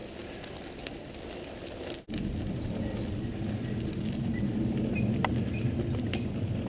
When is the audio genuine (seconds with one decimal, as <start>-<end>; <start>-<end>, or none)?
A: 0.0-6.7